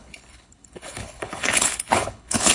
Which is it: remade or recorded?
remade